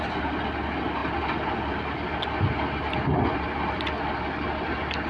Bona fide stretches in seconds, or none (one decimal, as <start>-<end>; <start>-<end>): 0.0-5.1

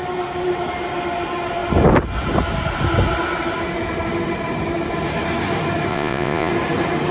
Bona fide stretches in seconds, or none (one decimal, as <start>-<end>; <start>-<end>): 0.0-5.9; 6.5-7.1